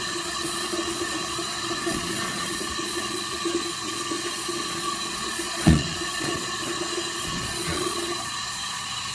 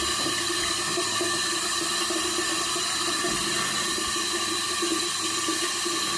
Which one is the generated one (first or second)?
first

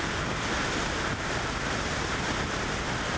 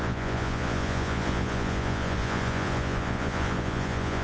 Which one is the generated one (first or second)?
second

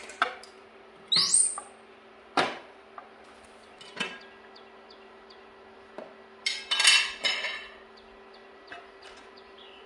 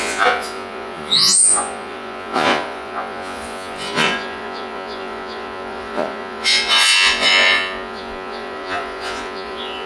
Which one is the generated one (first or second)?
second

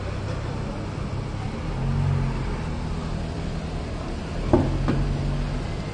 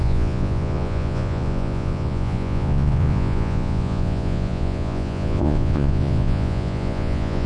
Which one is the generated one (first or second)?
second